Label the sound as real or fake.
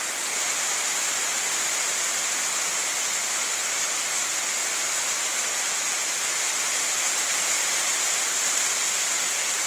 fake